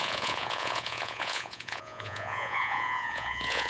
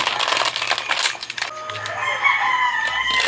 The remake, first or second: first